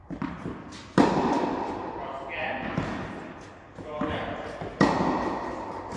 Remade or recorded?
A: recorded